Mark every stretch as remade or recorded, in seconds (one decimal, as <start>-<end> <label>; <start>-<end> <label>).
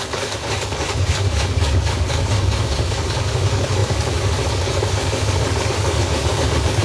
0.0-6.8 remade